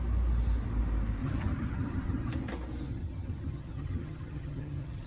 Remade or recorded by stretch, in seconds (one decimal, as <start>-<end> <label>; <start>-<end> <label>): 0.0-1.2 recorded; 1.2-2.3 remade; 2.3-2.9 recorded; 2.9-5.1 remade